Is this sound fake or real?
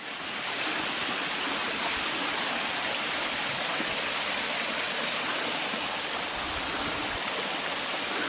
real